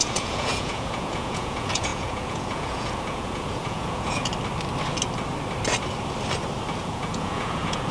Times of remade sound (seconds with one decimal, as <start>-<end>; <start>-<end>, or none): 0.0-4.3; 6.8-7.9